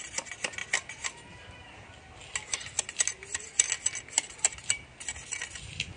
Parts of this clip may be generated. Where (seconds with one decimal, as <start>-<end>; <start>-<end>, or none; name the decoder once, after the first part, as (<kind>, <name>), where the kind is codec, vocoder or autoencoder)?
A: none